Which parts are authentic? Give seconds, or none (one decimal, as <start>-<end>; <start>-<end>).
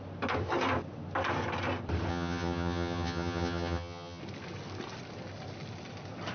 0.0-2.1; 4.2-6.3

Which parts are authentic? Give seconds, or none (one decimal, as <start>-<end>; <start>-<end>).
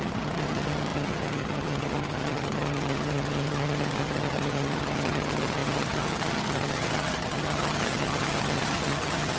none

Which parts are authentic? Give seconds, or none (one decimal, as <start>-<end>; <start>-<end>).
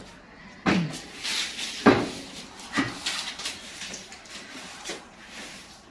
0.4-3.4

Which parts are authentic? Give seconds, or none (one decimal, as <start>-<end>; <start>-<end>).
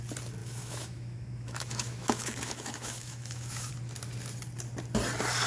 0.0-0.4; 3.7-5.5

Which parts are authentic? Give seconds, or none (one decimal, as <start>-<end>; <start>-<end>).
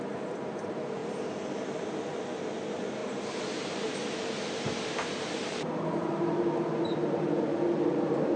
1.0-2.6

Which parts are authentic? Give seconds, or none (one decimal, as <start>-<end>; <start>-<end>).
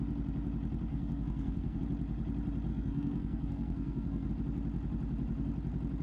0.0-0.9; 1.8-2.7; 4.3-6.0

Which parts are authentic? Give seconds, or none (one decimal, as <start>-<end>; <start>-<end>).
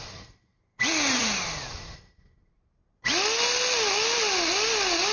0.0-5.1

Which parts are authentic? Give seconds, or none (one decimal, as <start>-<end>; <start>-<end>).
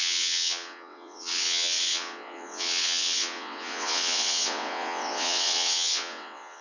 none